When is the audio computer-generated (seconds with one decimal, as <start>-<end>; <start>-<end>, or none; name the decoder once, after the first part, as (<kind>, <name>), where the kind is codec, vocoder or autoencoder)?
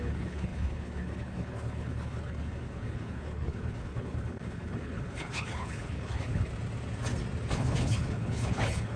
0.0-6.5 (codec, HILCodec); 7.5-9.0